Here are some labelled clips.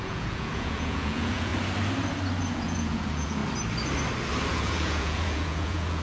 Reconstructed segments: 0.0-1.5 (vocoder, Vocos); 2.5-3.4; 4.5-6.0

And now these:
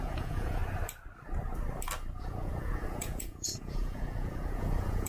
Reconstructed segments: 0.0-0.6 (vocoder, Vocos); 2.2-5.1

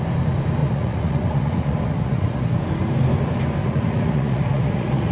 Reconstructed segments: 0.6-2.6 (vocoder, Vocos); 3.6-5.1

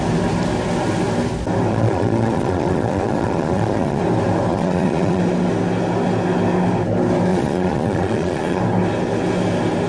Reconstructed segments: 1.7-4.0 (vocoder, Vocos); 4.5-5.2; 7.3-8.6

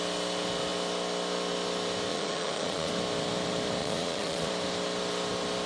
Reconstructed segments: 2.1-2.9 (vocoder, Vocos); 3.8-4.5